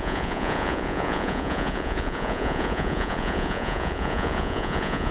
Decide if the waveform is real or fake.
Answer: fake